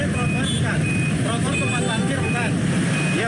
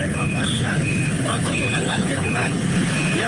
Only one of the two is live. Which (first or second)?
first